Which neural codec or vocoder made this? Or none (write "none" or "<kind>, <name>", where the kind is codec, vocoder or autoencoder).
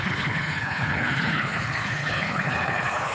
codec, HILCodec